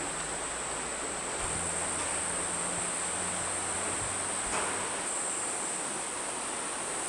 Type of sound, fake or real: real